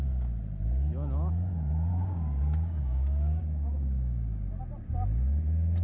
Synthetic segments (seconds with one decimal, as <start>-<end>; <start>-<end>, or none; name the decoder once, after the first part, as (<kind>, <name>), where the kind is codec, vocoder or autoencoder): 1.9-4.6 (codec, DAC)